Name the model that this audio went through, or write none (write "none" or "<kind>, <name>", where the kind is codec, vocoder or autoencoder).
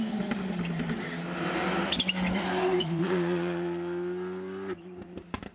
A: none